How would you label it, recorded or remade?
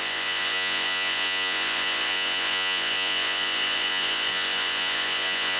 remade